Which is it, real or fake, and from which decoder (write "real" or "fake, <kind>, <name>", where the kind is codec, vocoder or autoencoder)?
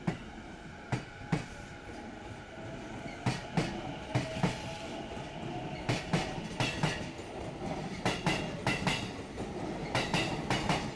real